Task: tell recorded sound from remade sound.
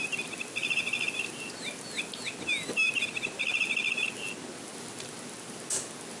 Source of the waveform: recorded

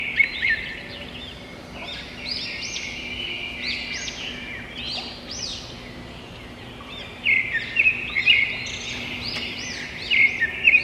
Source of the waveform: recorded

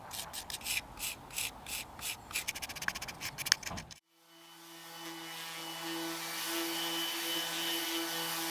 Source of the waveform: recorded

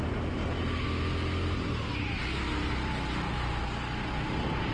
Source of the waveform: recorded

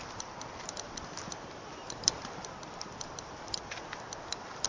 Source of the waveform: remade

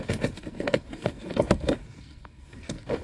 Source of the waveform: remade